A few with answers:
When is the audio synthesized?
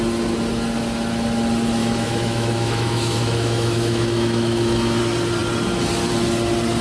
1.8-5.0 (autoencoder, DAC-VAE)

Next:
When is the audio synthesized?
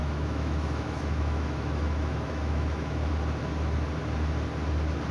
0.0-3.1 (autoencoder, DAC-VAE)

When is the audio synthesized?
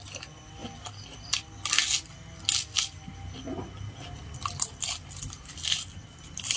none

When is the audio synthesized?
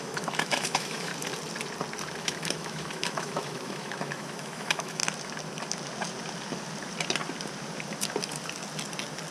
0.0-1.1 (autoencoder, DAC-VAE); 2.2-5.0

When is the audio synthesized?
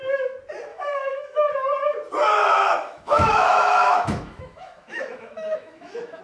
0.7-1.5 (autoencoder, DAC-VAE); 2.4-6.2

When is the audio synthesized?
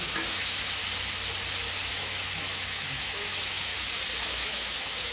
0.0-0.8 (autoencoder, DAC-VAE); 1.9-3.7; 4.2-5.1